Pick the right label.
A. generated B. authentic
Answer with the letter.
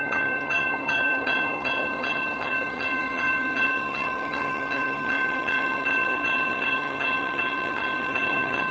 A